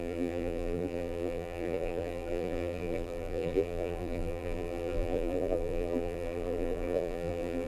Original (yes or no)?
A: no